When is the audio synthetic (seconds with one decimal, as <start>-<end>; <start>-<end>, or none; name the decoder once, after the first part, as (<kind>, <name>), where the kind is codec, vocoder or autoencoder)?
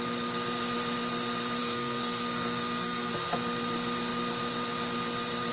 1.6-3.1 (codec, SNAC)